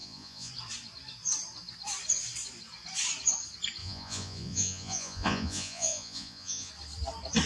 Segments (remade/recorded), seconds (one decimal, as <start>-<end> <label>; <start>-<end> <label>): 0.0-0.5 remade; 0.5-3.8 recorded; 3.8-6.7 remade; 6.7-7.5 recorded